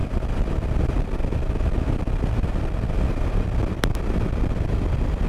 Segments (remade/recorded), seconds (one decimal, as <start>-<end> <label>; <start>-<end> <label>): 0.0-5.3 recorded